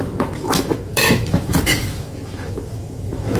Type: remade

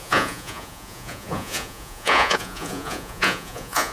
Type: remade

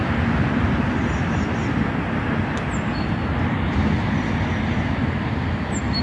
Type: recorded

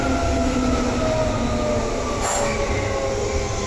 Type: recorded